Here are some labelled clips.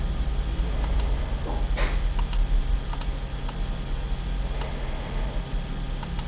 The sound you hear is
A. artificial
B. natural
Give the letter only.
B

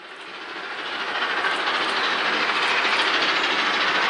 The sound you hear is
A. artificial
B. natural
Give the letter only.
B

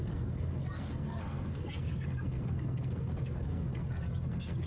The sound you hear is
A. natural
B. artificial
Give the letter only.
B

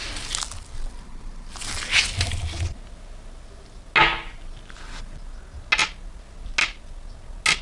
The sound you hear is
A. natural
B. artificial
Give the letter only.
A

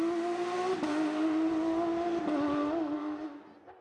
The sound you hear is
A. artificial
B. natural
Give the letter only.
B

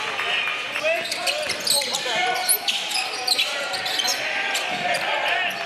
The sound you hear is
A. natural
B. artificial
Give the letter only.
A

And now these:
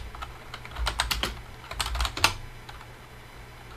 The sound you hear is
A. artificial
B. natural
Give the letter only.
B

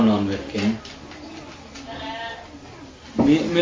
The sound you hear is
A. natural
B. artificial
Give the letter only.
A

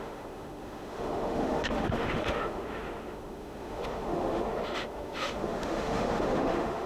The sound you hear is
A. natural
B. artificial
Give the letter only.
B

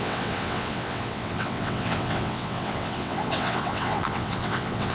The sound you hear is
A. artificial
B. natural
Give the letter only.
A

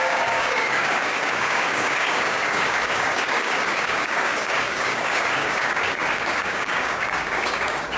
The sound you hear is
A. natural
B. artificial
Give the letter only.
B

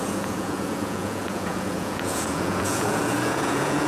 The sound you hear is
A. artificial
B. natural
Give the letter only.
A